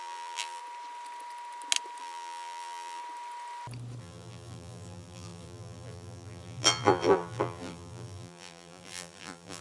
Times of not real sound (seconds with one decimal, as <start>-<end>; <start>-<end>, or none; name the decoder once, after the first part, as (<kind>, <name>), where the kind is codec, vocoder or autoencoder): 0.0-0.6 (vocoder, BigVGAN v2); 2.0-3.0; 4.0-9.6